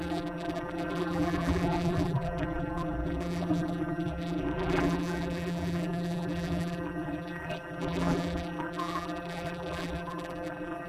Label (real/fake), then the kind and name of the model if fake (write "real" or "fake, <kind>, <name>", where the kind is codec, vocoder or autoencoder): fake, vocoder, BigVGAN v2